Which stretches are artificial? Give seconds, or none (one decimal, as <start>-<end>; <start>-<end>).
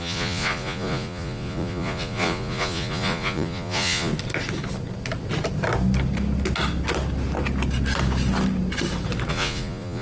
0.0-4.1; 9.3-10.0